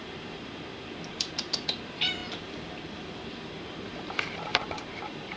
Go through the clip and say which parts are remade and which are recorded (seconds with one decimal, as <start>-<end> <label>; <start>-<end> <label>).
0.0-0.5 remade; 0.5-1.1 recorded; 1.1-2.2 remade; 2.2-3.3 recorded; 3.3-5.4 remade